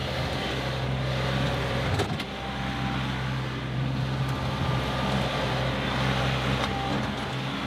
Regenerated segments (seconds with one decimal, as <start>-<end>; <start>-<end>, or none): 0.0-2.6